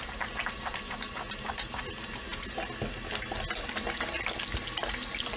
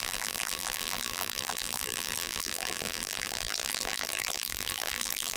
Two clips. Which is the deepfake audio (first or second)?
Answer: second